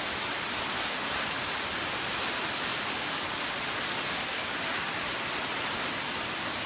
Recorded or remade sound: recorded